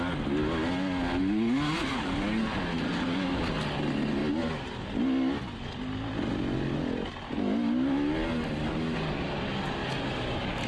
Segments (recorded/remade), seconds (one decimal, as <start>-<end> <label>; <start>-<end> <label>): 0.0-10.7 recorded